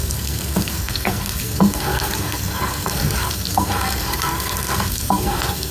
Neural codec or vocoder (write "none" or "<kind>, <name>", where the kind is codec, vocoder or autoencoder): codec, SNAC